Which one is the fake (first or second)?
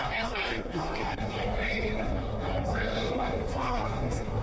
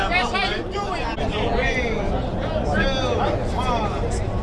first